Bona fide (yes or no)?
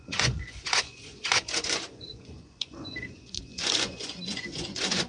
no